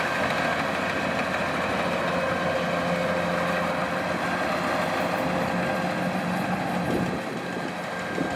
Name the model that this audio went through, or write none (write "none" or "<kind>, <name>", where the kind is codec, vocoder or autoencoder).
none